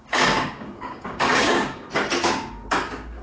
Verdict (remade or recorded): remade